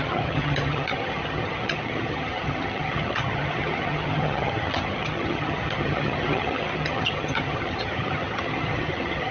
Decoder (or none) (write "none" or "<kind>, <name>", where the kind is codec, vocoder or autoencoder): vocoder, HiFi-GAN